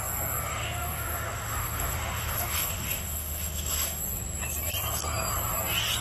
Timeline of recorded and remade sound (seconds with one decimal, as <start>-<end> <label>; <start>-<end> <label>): 0.0-0.4 recorded; 0.4-4.0 remade; 4.0-6.0 recorded